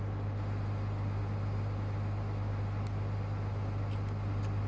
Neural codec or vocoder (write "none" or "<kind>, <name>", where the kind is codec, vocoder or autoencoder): none